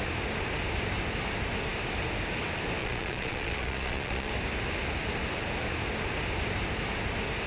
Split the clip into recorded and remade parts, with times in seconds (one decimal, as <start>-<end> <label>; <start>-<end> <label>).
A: 0.0-2.8 recorded; 2.8-4.3 remade; 4.3-7.5 recorded